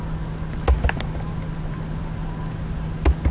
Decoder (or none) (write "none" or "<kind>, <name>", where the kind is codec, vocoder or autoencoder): none